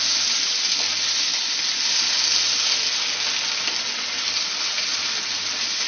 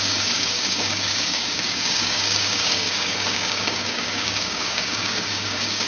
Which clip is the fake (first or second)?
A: second